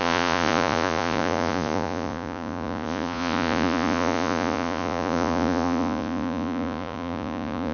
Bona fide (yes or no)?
no